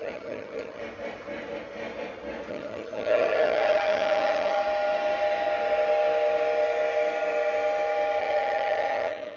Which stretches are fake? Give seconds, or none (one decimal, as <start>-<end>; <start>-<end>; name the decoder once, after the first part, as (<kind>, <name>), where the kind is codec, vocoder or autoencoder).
0.0-0.8 (vocoder, HiFi-GAN); 2.5-4.6; 8.2-9.4